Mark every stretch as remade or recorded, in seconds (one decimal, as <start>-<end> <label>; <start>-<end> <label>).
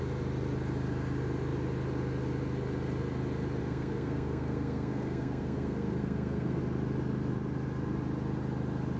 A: 0.0-3.6 recorded; 3.6-6.6 remade; 6.6-9.0 recorded